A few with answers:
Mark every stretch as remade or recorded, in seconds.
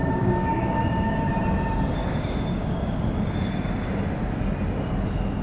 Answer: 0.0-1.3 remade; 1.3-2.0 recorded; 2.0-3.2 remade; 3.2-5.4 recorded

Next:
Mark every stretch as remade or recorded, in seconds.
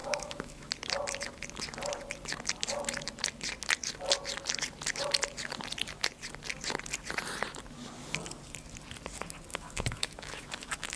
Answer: 0.0-0.7 remade; 0.7-9.5 recorded; 9.5-11.0 remade